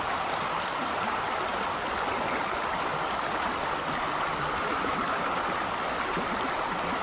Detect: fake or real real